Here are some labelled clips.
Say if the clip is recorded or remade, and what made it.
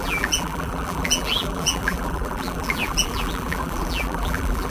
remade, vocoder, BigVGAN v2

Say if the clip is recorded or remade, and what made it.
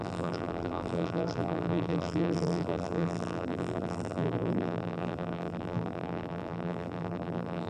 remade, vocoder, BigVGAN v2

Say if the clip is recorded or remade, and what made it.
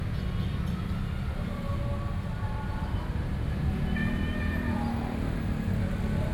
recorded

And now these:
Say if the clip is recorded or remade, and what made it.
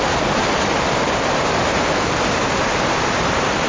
remade, vocoder, BigVGAN v2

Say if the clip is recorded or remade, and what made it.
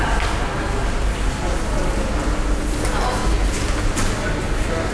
recorded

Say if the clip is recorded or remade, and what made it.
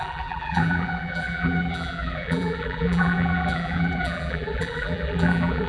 remade, vocoder, BigVGAN v2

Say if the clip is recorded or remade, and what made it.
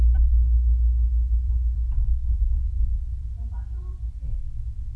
remade, vocoder, BigVGAN v2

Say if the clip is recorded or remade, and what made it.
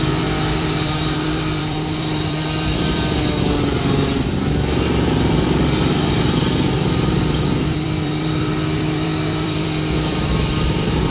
remade, vocoder, BigVGAN v2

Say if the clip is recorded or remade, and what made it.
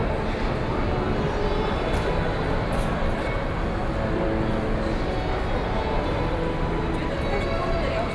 recorded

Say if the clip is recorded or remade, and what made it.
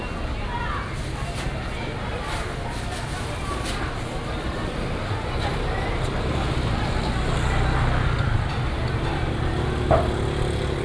recorded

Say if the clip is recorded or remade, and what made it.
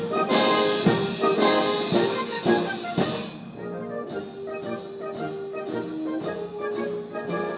recorded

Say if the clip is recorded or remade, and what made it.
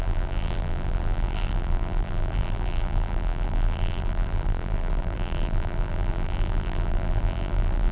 remade, vocoder, BigVGAN v2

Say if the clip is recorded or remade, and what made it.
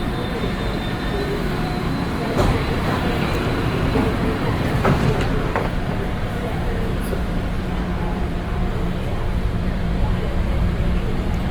remade, vocoder, BigVGAN v2